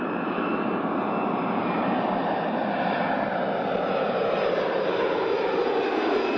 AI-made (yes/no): yes